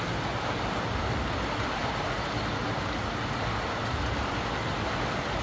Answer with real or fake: real